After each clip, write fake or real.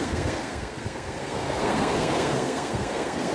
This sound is fake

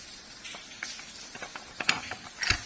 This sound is real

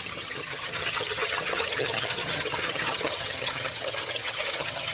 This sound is fake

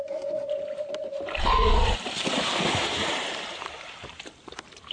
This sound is fake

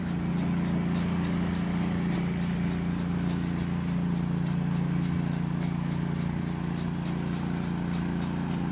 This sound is real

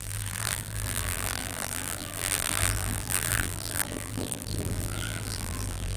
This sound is fake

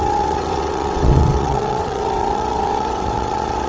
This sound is fake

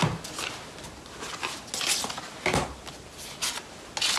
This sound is real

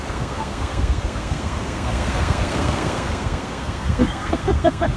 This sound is fake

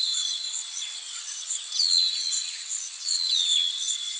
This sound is fake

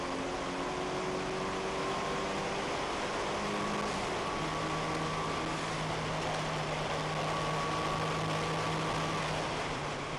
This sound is real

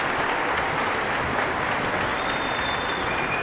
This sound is real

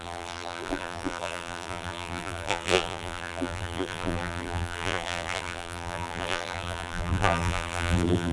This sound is fake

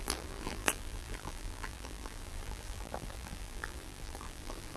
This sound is fake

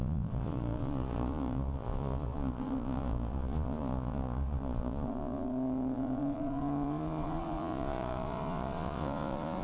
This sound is fake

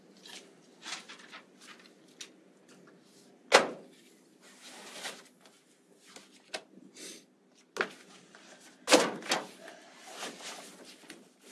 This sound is real